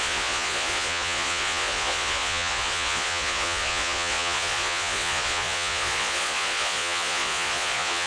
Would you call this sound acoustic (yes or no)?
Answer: no